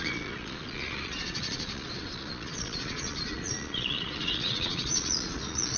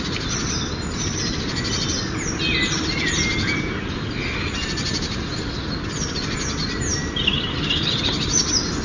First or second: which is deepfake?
first